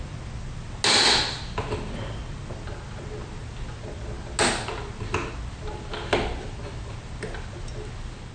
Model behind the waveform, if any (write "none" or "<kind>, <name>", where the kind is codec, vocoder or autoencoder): none